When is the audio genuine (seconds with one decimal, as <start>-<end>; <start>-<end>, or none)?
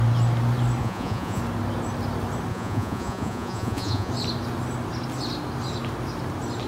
0.0-0.8; 1.4-2.5; 4.1-6.7